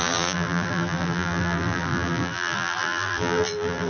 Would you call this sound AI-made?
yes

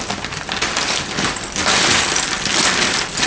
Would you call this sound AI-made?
no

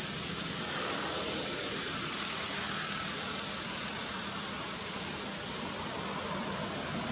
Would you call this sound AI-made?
no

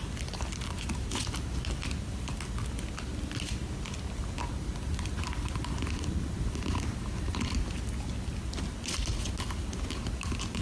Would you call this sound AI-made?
no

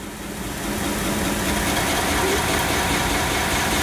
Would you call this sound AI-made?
no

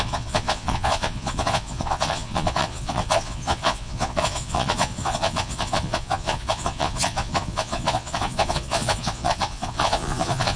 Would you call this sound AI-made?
yes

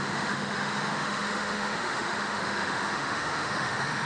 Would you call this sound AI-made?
yes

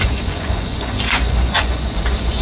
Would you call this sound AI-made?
yes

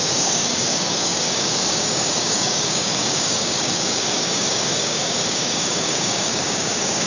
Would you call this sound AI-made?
yes